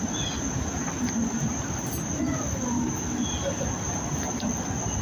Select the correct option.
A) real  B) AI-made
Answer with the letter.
A